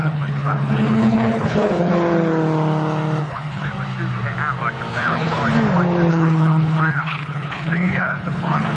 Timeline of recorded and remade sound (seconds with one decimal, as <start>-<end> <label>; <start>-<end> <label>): 0.0-1.9 remade; 1.9-3.2 recorded; 3.2-3.7 remade; 3.7-4.9 recorded; 4.9-5.4 remade; 5.4-6.1 recorded; 6.1-8.8 remade